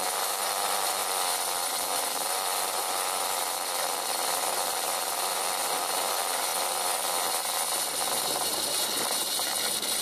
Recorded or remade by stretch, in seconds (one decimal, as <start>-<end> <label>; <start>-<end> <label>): 0.0-1.0 remade; 1.0-1.6 recorded; 1.6-3.7 remade; 3.7-5.0 recorded; 5.0-6.5 remade; 6.5-8.1 recorded; 8.1-10.0 remade